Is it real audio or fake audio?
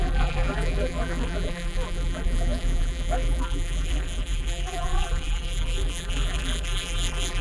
fake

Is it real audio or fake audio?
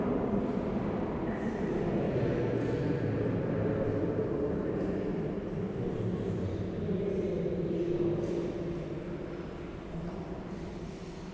real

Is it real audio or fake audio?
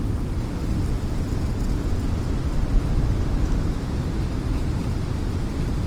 real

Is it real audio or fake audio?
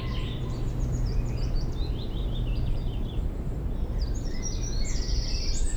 fake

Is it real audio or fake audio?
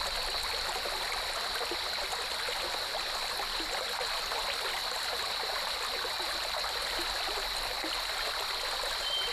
real